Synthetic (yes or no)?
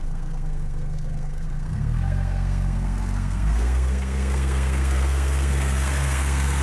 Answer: yes